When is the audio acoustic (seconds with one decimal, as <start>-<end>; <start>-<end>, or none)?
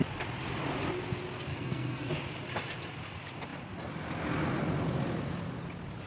0.0-1.5; 2.1-6.1